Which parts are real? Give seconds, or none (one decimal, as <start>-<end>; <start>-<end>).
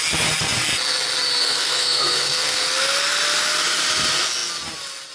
0.0-1.4; 2.6-5.1